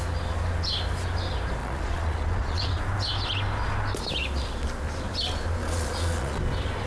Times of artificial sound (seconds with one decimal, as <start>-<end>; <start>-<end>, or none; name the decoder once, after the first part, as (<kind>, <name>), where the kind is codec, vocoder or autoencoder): 1.6-2.8 (vocoder, Vocos); 5.6-6.4